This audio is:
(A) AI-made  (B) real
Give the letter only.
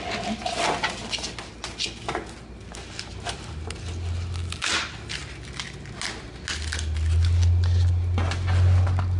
B